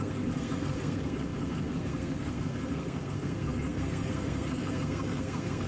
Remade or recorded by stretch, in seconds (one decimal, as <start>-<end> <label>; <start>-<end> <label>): 0.0-5.7 remade